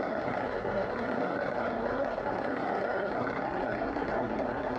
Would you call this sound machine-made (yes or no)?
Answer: yes